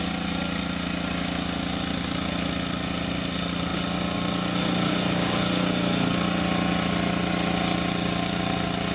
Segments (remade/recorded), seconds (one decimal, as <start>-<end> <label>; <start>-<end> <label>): 0.0-8.9 recorded